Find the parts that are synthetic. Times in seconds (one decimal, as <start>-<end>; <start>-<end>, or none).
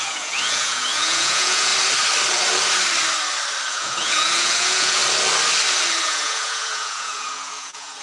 0.0-1.7; 3.7-5.0; 6.0-8.0